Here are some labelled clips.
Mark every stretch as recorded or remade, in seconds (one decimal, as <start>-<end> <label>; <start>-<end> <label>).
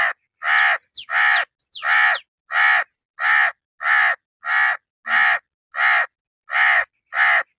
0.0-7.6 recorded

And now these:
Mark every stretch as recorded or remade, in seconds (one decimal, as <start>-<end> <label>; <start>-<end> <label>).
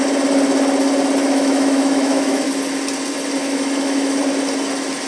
0.0-1.2 recorded; 1.2-2.5 remade; 2.5-3.4 recorded; 3.4-4.2 remade; 4.2-5.1 recorded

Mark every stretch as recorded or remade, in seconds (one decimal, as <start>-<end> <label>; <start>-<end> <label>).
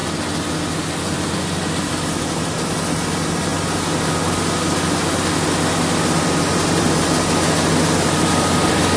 0.0-9.0 recorded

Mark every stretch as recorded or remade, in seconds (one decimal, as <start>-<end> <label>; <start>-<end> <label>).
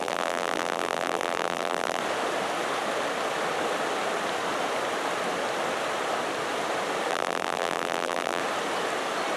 0.0-2.0 remade; 2.0-7.1 recorded; 7.1-8.4 remade; 8.4-9.4 recorded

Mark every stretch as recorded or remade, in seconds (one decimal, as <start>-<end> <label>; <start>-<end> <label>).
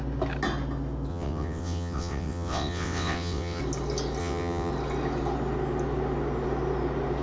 0.0-1.1 recorded; 1.1-3.6 remade; 3.6-4.2 recorded; 4.2-4.7 remade; 4.7-7.2 recorded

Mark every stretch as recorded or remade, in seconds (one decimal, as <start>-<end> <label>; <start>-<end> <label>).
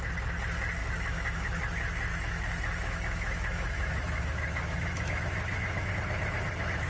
0.0-0.8 recorded; 0.8-1.6 remade; 1.6-2.1 recorded; 2.1-5.9 remade; 5.9-6.9 recorded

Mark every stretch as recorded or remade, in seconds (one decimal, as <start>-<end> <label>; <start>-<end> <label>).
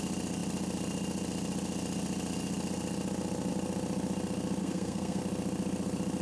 0.0-4.6 recorded; 4.6-5.2 remade; 5.2-6.2 recorded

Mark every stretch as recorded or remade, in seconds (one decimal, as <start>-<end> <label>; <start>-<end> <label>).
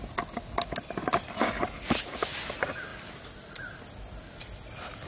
0.0-5.1 recorded